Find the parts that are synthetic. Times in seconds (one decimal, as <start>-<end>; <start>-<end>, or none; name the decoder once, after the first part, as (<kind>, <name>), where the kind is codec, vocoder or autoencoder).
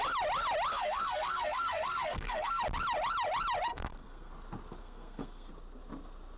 0.7-2.6 (codec, SNAC); 3.7-4.3; 4.8-5.5